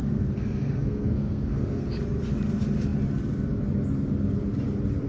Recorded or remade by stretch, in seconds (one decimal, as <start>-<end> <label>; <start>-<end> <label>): 0.0-1.8 remade; 1.8-5.1 recorded